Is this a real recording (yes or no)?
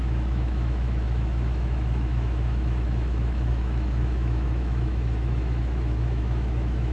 no